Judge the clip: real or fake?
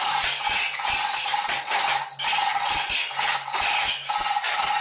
real